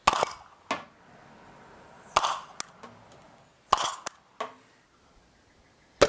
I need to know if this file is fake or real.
real